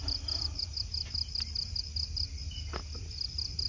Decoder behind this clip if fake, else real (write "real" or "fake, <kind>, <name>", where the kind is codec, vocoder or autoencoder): real